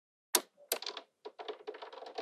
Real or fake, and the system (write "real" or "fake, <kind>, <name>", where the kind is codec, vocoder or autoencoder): real